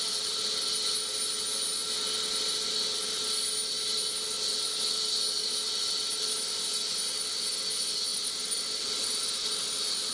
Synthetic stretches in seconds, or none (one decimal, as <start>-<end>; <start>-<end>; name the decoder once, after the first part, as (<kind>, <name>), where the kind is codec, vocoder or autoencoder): 8.1-9.5 (vocoder, BigVGAN v2)